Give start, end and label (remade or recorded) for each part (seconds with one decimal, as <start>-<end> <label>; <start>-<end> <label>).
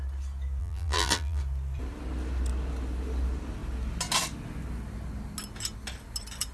0.0-0.6 recorded; 0.6-1.4 remade; 1.4-6.5 recorded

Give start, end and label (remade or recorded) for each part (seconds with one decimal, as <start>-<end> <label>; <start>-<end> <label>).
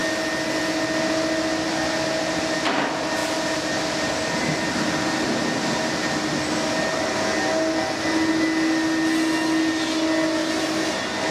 0.0-3.2 recorded; 3.2-3.7 remade; 3.7-11.3 recorded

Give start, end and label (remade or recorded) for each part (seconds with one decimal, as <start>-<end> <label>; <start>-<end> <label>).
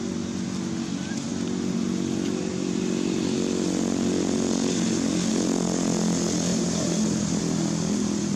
0.0-6.5 recorded; 6.5-7.4 remade; 7.4-8.4 recorded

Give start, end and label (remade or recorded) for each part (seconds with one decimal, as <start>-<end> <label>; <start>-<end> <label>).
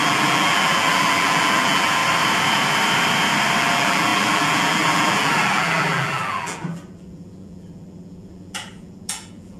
0.0-2.0 remade; 2.0-3.6 recorded; 3.6-9.6 remade